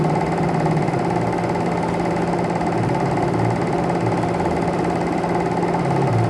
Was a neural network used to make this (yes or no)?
no